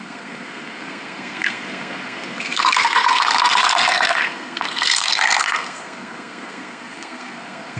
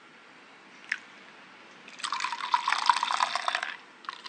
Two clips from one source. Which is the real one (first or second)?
second